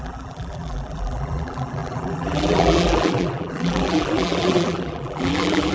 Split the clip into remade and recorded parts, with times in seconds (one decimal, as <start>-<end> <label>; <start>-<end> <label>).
0.0-5.7 remade